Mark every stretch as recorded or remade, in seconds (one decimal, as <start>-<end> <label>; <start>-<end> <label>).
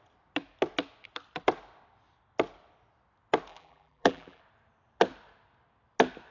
0.0-3.5 recorded; 3.5-4.4 remade; 4.4-6.3 recorded